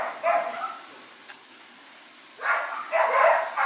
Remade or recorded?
recorded